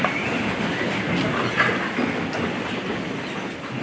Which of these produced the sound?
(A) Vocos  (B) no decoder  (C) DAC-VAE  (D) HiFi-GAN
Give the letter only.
B